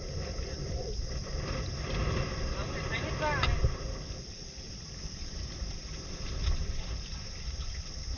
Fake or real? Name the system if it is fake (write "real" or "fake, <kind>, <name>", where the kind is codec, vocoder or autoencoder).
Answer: real